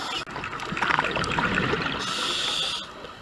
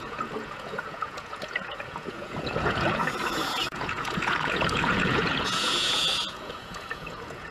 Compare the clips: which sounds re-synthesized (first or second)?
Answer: second